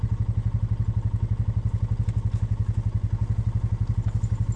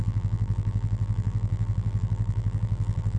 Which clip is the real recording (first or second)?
first